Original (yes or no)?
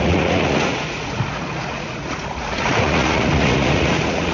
no